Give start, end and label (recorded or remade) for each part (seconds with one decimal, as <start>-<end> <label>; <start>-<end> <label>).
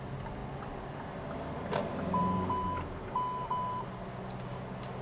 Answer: 0.0-5.0 recorded